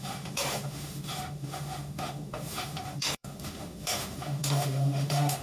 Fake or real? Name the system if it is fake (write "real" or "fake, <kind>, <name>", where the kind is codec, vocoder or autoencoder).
fake, autoencoder, DAC-VAE